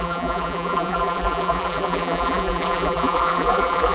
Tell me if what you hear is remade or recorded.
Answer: remade